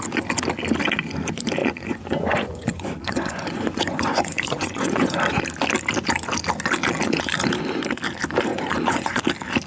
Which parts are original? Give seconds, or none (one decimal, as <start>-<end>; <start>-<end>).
0.0-1.6; 5.2-8.5; 9.2-9.7